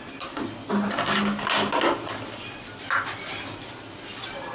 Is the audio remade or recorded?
recorded